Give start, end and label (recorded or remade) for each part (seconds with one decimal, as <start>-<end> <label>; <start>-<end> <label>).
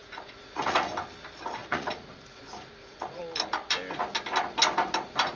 0.0-0.9 remade; 0.9-1.6 recorded; 1.6-3.2 remade; 3.2-5.4 recorded